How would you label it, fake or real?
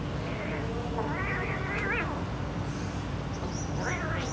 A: real